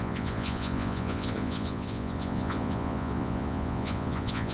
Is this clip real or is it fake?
fake